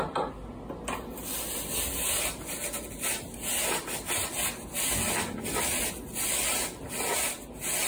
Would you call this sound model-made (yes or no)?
no